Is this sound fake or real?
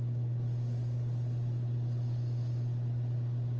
real